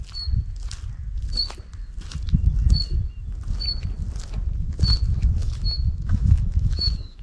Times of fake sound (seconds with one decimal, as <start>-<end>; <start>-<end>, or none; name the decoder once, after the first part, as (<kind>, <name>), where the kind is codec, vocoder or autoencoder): 5.4-7.2 (autoencoder, DAC-VAE)